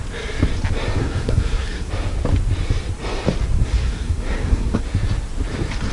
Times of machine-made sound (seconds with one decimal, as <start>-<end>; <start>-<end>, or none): 1.0-1.9; 3.6-4.8

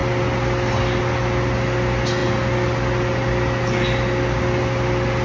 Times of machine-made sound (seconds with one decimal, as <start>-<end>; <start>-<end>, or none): none

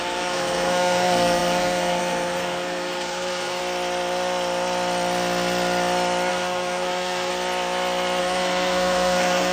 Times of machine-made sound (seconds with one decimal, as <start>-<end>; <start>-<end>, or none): 0.0-3.6; 6.3-7.3; 8.2-9.5